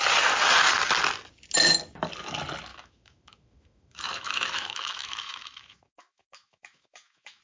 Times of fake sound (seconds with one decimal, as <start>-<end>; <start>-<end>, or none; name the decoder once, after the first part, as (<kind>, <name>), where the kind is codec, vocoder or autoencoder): 2.7-7.4 (autoencoder, DAC-VAE)

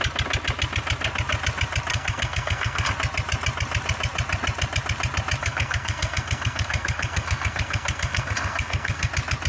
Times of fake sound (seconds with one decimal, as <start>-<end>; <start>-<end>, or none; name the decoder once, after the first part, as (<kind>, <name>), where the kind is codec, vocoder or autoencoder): 1.9-2.9 (codec, SNAC); 5.4-9.1

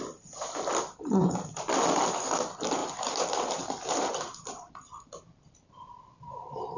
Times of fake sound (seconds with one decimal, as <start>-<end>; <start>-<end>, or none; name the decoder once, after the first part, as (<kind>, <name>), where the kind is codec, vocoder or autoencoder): 2.8-4.7 (vocoder, BigVGAN v2)